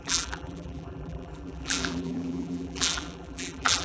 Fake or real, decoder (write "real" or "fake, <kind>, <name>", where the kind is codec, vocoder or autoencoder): fake, vocoder, BigVGAN v2